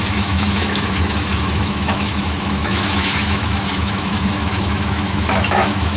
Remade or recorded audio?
remade